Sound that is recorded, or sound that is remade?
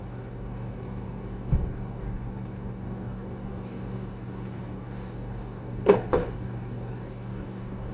remade